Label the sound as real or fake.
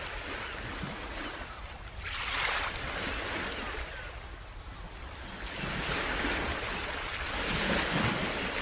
real